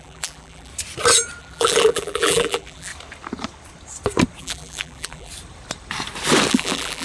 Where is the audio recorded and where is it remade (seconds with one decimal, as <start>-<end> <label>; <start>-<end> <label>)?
0.0-0.7 remade; 0.7-1.4 recorded; 1.4-2.9 remade; 2.9-4.4 recorded; 4.4-5.3 remade; 5.3-6.5 recorded; 6.5-7.0 remade